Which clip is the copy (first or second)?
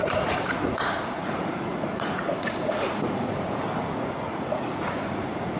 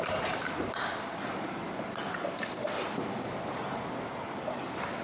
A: first